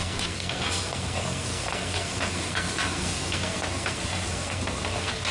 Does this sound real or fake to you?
fake